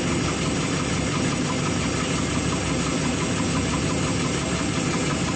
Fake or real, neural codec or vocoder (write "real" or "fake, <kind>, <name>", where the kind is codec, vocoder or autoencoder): real